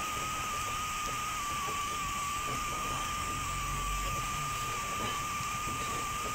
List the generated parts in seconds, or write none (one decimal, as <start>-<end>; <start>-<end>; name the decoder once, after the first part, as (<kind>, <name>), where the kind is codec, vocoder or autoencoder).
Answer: 1.8-4.2 (codec, DAC)